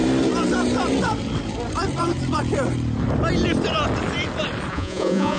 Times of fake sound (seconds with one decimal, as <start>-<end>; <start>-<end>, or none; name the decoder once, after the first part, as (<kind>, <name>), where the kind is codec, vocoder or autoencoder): 4.7-5.4 (vocoder, Vocos)

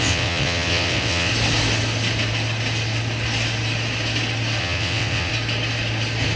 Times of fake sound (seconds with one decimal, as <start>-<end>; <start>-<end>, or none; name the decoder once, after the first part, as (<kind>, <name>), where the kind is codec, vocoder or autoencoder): 0.0-1.3 (vocoder, WaveNeXt); 4.6-5.3